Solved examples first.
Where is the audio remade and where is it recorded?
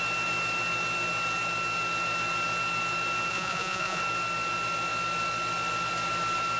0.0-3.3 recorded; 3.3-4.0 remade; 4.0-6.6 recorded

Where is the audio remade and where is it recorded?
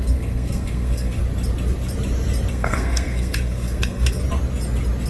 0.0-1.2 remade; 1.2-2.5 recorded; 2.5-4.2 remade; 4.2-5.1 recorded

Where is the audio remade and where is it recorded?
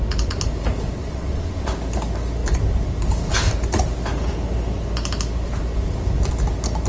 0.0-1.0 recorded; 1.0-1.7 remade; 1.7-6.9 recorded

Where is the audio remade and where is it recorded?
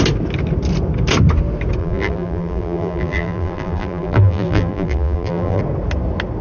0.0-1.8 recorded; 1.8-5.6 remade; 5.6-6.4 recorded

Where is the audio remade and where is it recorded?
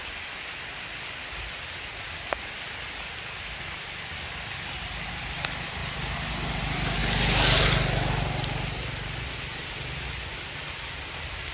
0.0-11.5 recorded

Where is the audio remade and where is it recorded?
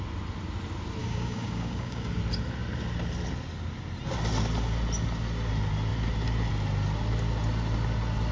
0.0-1.0 recorded; 1.0-2.2 remade; 2.2-8.3 recorded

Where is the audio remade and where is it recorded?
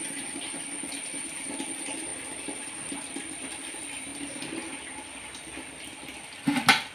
0.0-6.9 recorded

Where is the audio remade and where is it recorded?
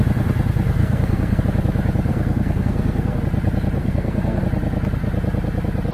0.0-0.8 recorded; 0.8-1.4 remade; 1.4-2.1 recorded; 2.1-3.2 remade; 3.2-3.8 recorded; 3.8-4.4 remade; 4.4-5.9 recorded